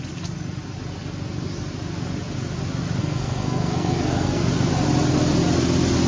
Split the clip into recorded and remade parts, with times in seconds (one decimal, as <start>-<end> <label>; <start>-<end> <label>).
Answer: 0.0-3.0 recorded; 3.0-4.4 remade; 4.4-6.1 recorded

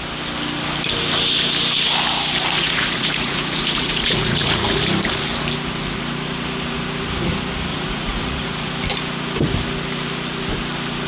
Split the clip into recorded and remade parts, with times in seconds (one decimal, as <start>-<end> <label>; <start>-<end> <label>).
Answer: 0.0-2.6 recorded; 2.6-4.8 remade; 4.8-7.7 recorded; 7.7-8.7 remade; 8.7-11.1 recorded

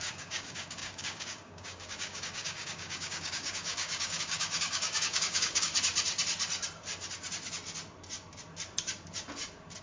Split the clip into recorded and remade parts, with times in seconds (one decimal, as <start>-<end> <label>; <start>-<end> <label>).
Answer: 0.0-5.7 remade; 5.7-9.8 recorded

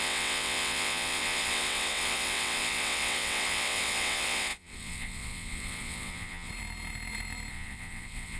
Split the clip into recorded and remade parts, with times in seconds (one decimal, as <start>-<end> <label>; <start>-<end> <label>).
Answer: 0.0-6.5 remade; 6.5-7.5 recorded; 7.5-8.4 remade